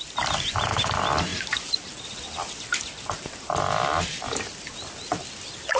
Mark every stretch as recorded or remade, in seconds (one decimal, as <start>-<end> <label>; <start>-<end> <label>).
0.0-5.8 recorded